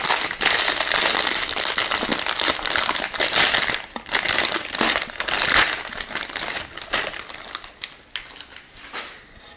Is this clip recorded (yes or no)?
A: yes